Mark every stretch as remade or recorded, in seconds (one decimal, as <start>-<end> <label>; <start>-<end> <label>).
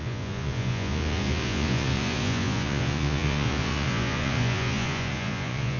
0.0-5.8 remade